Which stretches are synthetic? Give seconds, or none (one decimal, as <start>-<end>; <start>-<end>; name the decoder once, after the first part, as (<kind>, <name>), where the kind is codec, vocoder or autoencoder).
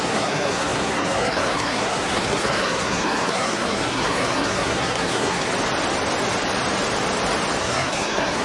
0.0-5.5 (codec, SNAC); 7.6-8.4